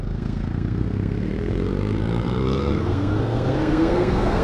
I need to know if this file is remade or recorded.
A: remade